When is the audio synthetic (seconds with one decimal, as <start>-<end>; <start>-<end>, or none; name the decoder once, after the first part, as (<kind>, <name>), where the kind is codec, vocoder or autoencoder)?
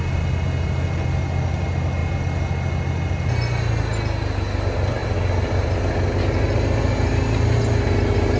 none